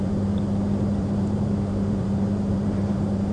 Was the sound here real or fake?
fake